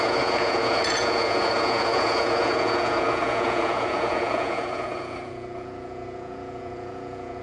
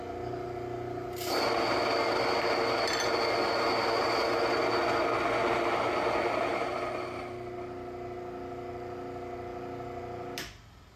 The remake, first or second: first